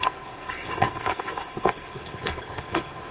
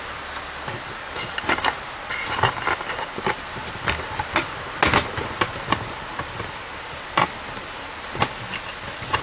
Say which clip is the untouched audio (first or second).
second